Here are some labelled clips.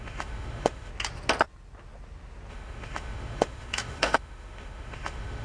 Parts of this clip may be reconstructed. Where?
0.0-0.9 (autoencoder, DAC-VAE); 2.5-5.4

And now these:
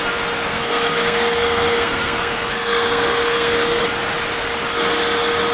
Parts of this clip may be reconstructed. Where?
0.5-3.8 (codec, SNAC)